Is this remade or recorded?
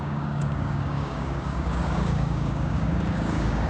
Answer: remade